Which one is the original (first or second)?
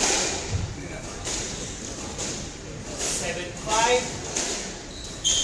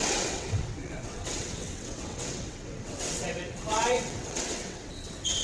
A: first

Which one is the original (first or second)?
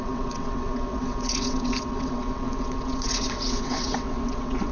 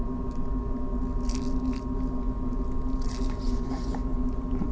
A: second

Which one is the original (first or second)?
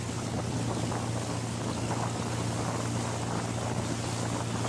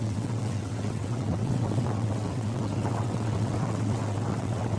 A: first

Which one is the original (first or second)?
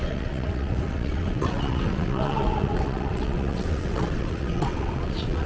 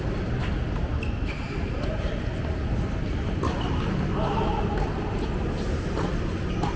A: second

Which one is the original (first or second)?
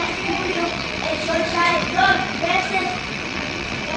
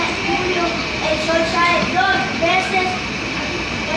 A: second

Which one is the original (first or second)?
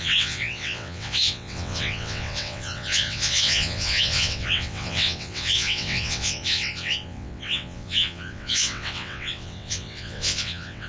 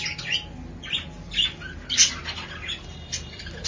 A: second